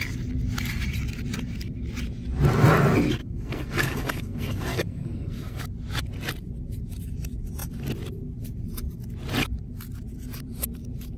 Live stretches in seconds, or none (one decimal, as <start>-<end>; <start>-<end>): 0.0-3.2; 5.6-11.2